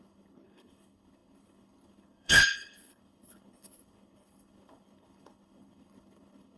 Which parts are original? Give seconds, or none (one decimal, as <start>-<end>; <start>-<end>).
none